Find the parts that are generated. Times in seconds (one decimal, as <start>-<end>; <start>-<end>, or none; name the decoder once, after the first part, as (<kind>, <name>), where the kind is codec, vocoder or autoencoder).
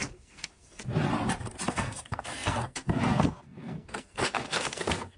0.0-0.8 (codec, SNAC); 1.7-5.2